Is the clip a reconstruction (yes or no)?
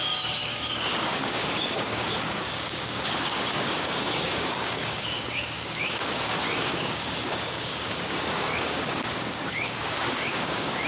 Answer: yes